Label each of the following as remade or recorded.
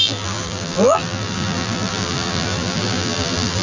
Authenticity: remade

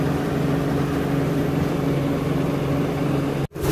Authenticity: recorded